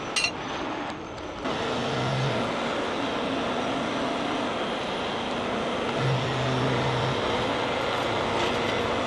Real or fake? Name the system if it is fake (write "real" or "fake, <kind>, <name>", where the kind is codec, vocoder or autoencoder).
real